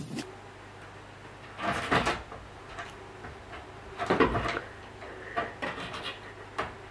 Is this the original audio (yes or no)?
yes